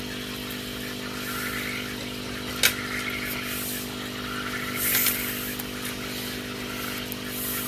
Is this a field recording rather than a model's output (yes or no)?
yes